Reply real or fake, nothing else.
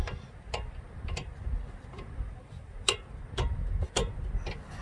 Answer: real